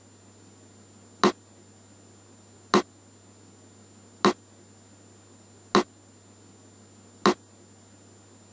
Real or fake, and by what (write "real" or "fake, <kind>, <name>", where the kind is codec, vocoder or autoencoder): real